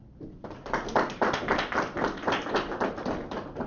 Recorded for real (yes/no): yes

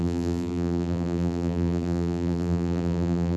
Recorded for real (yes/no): no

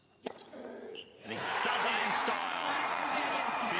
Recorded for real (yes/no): no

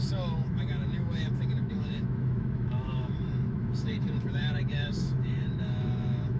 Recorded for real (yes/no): no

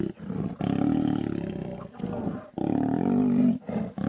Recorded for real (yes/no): yes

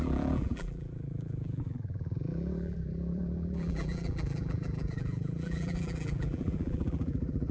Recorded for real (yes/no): no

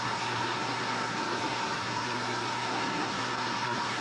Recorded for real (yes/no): no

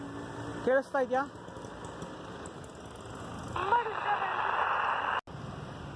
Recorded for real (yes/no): yes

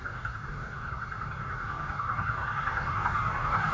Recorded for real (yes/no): no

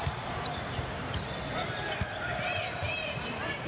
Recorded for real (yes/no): no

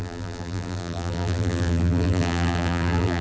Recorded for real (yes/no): no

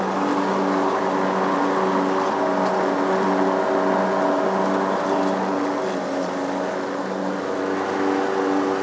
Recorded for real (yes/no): yes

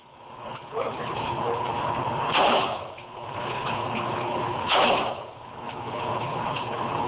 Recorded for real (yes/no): no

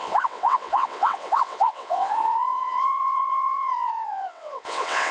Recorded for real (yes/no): no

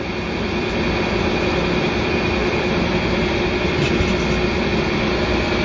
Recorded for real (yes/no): yes